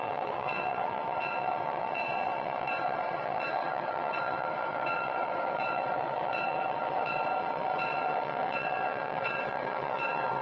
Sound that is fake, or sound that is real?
fake